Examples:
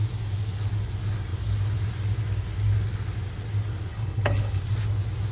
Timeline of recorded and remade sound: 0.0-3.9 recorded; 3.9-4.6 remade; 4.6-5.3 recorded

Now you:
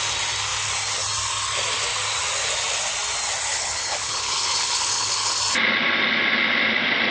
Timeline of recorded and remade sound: 0.0-3.5 recorded; 3.5-5.4 remade; 5.4-7.1 recorded

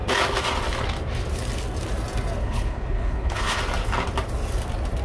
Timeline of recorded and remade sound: 0.0-2.4 recorded; 2.4-3.6 remade; 3.6-5.0 recorded

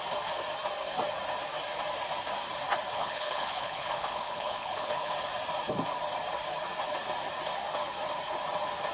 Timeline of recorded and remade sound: 0.0-3.0 recorded; 3.0-5.1 remade; 5.1-8.9 recorded

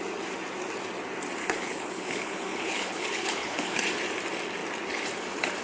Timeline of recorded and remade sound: 0.0-1.4 recorded; 1.4-3.8 remade; 3.8-5.6 recorded

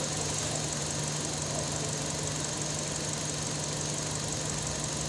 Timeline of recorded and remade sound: 0.0-5.1 recorded